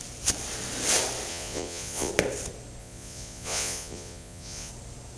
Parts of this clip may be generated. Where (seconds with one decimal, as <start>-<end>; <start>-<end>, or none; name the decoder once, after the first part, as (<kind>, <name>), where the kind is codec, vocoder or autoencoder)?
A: 1.3-2.1 (vocoder, Vocos); 2.8-4.7